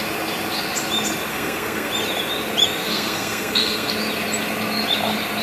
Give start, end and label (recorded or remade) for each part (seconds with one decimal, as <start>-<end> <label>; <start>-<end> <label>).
0.0-1.3 recorded; 1.3-1.9 remade; 1.9-2.8 recorded; 2.8-3.9 remade; 3.9-5.4 recorded